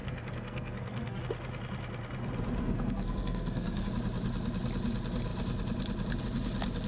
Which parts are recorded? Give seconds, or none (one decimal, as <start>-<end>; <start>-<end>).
1.2-2.6; 3.9-6.9